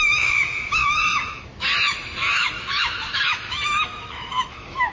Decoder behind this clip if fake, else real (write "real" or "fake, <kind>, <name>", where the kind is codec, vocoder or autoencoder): fake, autoencoder, DAC-VAE